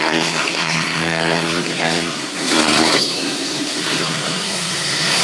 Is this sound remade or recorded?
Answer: remade